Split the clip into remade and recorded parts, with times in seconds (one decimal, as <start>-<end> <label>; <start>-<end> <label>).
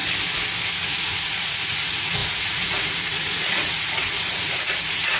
0.0-0.7 recorded; 0.7-5.2 remade